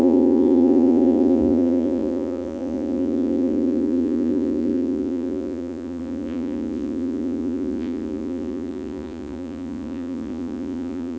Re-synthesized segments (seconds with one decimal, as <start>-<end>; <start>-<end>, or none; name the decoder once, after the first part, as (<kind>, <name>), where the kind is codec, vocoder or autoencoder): 0.0-11.2 (vocoder, Vocos)